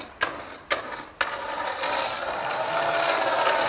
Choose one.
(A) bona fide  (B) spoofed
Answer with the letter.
A